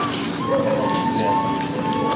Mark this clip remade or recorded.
recorded